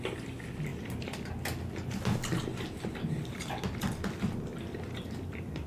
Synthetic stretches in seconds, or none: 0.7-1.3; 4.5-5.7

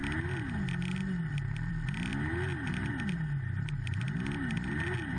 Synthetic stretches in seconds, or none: none

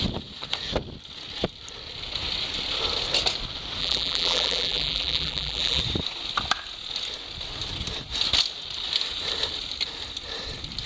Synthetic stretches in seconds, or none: 3.8-5.8

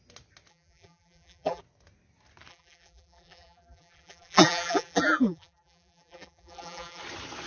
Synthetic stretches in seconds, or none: 0.5-1.6; 2.5-7.0

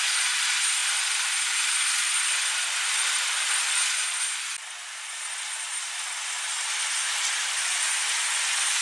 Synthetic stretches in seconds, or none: none